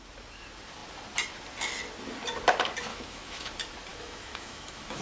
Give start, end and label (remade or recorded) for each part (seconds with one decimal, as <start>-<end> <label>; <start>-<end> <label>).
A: 0.0-2.9 recorded; 2.9-3.5 remade; 3.5-3.9 recorded; 3.9-5.0 remade